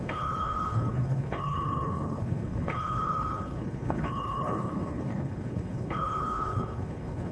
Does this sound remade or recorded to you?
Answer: remade